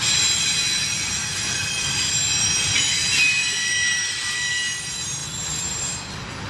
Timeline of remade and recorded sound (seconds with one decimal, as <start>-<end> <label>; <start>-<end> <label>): 0.0-6.5 recorded

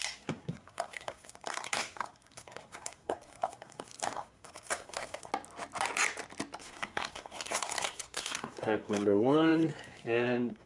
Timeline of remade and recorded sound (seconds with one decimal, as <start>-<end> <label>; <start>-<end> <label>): 0.0-5.3 remade; 5.3-6.6 recorded; 6.6-10.7 remade